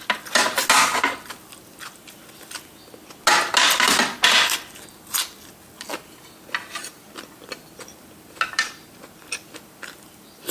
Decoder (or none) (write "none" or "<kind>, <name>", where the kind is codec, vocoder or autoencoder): none